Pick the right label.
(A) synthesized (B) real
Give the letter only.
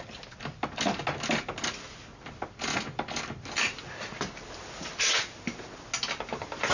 B